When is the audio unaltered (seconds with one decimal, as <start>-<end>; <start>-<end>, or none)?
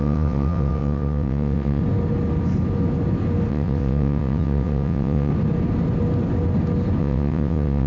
1.8-3.5; 5.3-7.0